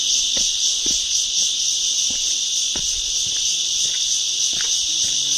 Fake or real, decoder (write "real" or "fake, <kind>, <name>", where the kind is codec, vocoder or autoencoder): real